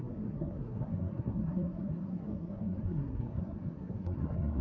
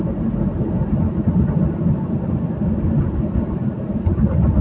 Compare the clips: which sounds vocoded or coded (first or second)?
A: first